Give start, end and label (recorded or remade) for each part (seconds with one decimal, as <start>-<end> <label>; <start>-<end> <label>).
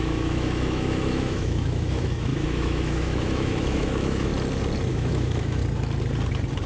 0.0-4.3 remade; 4.3-4.9 recorded; 4.9-5.6 remade; 5.6-6.7 recorded